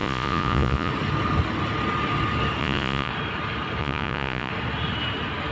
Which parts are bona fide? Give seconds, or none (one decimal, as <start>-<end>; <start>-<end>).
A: 0.9-2.6; 3.1-3.8; 4.5-5.5